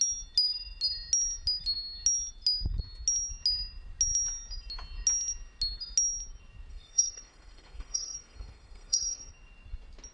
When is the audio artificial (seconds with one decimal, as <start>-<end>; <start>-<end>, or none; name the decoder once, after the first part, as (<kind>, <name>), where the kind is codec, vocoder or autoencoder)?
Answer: 6.7-9.3 (codec, SNAC)